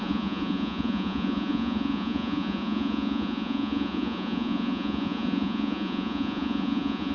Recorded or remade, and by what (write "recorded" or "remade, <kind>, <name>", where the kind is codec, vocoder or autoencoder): remade, vocoder, Vocos